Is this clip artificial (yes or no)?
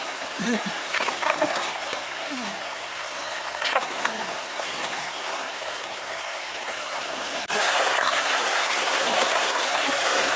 yes